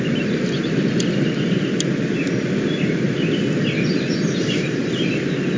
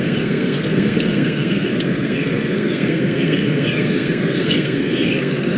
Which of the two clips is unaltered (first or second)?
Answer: first